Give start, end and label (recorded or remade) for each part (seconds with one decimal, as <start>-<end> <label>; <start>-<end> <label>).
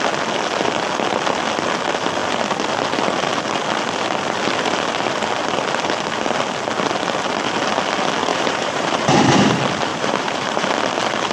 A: 0.0-8.3 recorded; 8.3-9.5 remade; 9.5-9.9 recorded; 9.9-10.7 remade; 10.7-11.3 recorded